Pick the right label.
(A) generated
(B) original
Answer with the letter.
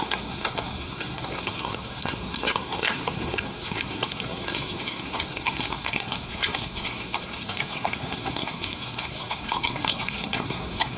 A